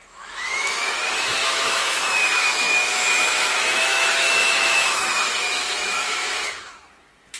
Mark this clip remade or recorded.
remade